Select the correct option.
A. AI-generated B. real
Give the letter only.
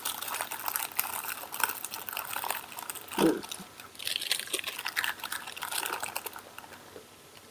B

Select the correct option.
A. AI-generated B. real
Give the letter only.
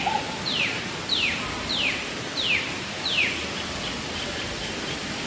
B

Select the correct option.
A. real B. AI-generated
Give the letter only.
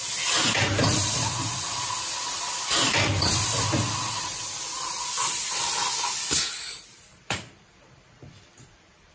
B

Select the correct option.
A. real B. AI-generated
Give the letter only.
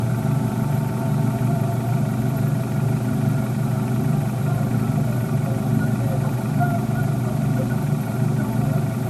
B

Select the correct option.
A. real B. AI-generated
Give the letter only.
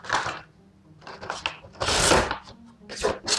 A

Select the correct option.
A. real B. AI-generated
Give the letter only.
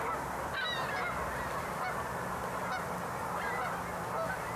A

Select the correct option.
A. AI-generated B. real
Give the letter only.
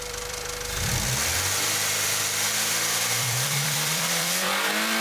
A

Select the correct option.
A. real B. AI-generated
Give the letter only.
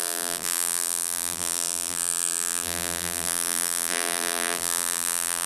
B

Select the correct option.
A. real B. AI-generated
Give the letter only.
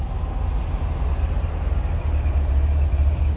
A